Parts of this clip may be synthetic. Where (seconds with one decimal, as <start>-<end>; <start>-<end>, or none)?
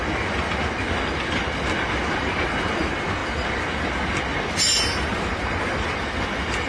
none